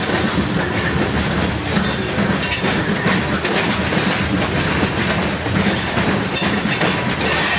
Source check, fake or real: real